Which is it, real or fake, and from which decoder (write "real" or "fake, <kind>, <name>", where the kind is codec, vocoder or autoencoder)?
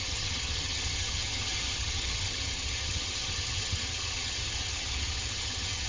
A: fake, vocoder, HiFi-GAN